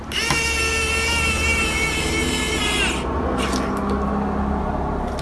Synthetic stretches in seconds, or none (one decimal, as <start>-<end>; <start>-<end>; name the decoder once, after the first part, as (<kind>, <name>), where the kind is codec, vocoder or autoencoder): none